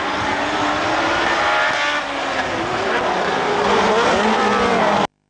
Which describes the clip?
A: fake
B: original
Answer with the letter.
B